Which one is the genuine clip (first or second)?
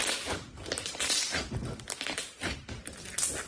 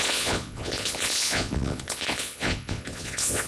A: first